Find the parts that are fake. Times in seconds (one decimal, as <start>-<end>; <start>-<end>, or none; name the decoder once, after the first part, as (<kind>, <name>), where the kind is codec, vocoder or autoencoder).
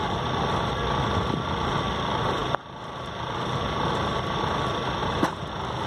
5.0-5.5 (vocoder, BigVGAN v2)